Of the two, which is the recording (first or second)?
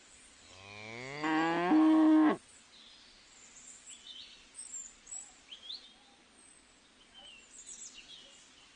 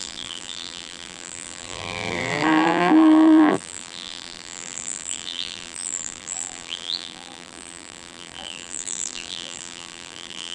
first